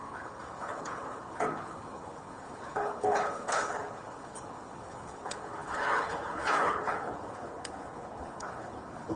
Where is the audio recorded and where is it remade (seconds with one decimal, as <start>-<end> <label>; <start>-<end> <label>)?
0.0-9.2 remade